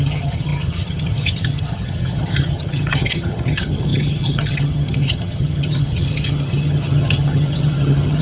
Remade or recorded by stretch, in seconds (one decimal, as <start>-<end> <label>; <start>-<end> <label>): 0.0-8.2 remade